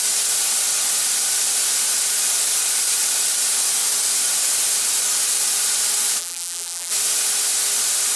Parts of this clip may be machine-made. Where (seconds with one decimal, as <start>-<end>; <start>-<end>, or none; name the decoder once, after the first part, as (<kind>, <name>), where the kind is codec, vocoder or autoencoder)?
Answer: 6.2-6.9 (vocoder, BigVGAN v2)